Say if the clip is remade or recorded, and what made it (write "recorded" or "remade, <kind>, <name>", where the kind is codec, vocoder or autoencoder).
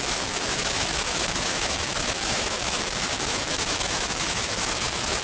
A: remade, autoencoder, DAC-VAE